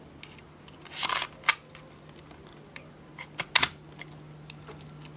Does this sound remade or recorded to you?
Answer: recorded